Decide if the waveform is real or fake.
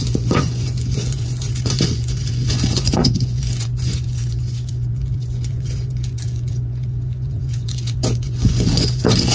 fake